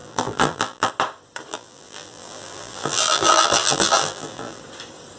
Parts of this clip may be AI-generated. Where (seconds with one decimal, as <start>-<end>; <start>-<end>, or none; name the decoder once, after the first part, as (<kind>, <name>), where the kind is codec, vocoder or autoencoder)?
0.0-0.9 (vocoder, BigVGAN v2); 1.5-4.6